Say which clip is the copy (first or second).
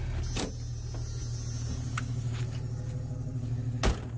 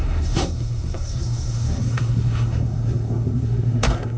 second